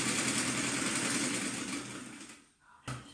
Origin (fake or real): real